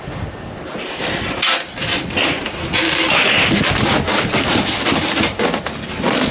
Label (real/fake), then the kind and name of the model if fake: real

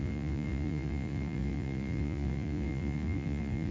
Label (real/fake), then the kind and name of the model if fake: fake, vocoder, Vocos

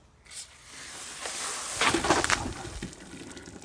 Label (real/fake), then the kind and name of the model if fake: real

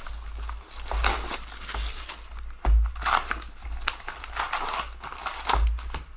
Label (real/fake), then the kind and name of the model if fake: real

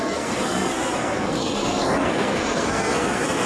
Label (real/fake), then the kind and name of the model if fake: fake, codec, SNAC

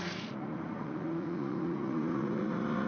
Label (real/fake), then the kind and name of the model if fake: fake, vocoder, Vocos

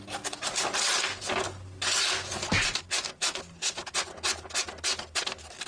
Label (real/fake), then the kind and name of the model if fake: real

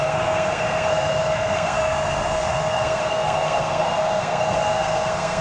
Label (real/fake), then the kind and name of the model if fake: fake, codec, SNAC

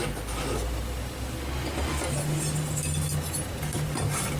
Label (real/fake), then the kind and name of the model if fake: real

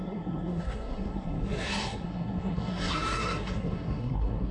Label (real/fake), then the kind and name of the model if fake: fake, codec, SNAC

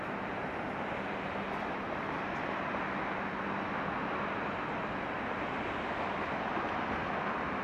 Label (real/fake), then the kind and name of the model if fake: real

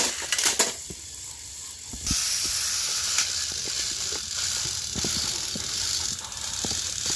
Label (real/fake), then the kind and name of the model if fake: real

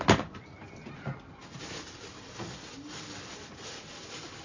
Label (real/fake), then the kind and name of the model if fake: real